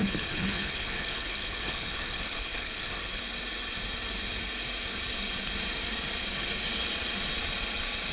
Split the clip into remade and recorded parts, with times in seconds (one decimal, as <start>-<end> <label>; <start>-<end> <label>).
0.0-3.2 remade; 3.2-8.1 recorded